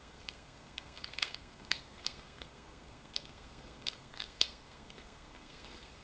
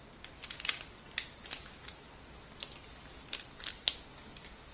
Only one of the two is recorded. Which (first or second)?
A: second